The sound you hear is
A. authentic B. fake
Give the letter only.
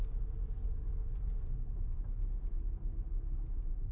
A